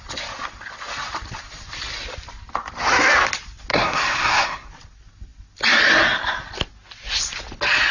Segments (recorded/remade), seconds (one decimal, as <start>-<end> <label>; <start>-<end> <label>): 0.0-3.7 recorded; 3.7-4.7 remade; 4.7-7.9 recorded